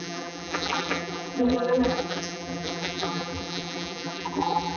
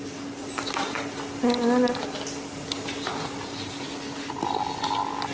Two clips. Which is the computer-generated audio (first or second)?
first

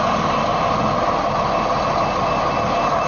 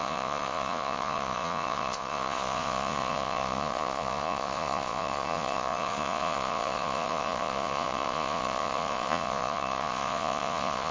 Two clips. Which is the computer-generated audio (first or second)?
second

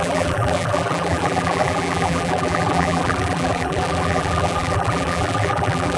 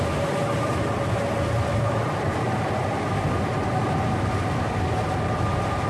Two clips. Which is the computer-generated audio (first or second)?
first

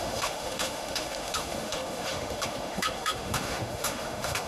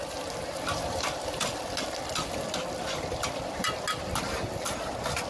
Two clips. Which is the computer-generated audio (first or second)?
first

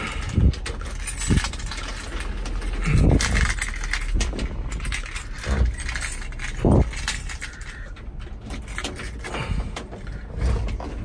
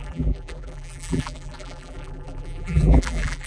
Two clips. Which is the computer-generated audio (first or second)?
second